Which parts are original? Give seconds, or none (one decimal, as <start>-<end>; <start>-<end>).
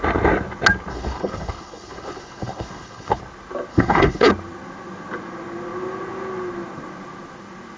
0.0-0.9; 3.2-3.7; 4.3-7.8